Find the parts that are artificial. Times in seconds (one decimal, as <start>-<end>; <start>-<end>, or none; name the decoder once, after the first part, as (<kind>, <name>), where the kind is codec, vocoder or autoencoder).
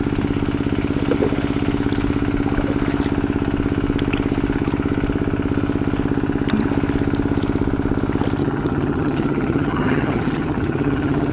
8.4-11.3 (vocoder, HiFi-GAN)